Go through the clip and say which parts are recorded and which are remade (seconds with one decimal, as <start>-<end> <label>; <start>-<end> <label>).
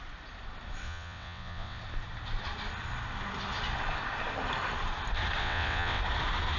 0.0-0.8 recorded; 0.8-1.8 remade; 1.8-5.4 recorded; 5.4-6.0 remade; 6.0-6.6 recorded